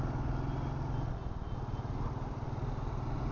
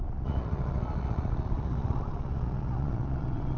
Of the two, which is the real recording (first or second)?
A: first